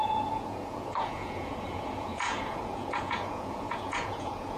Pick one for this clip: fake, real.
fake